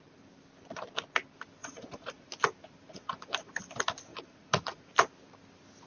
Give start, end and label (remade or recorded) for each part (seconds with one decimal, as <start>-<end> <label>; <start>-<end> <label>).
0.0-1.6 recorded; 1.6-2.3 remade; 2.3-2.9 recorded; 2.9-3.5 remade; 3.5-4.1 recorded; 4.1-4.9 remade; 4.9-5.9 recorded